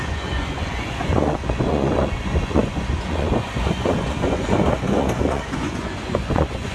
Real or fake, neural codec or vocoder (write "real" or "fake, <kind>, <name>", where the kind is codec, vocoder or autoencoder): fake, vocoder, Vocos